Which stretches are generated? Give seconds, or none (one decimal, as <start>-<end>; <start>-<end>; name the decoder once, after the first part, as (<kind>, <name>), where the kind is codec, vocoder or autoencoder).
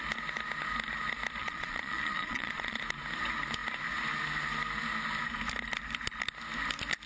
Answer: 1.4-2.8 (vocoder, Vocos)